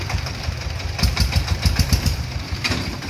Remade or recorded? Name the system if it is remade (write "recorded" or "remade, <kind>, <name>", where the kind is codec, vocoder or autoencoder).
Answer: remade, vocoder, BigVGAN v2